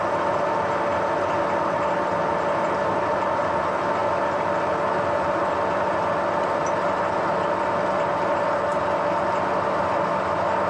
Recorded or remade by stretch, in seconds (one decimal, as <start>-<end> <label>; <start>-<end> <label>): 0.0-10.7 recorded